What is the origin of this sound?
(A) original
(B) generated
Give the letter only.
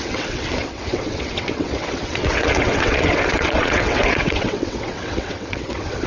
B